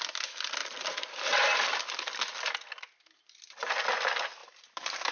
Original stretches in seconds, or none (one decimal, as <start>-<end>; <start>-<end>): 0.0-0.6; 1.8-4.4